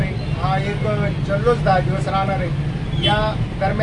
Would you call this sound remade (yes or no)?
no